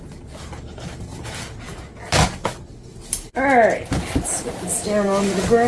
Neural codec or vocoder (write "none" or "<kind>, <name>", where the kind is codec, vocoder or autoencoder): none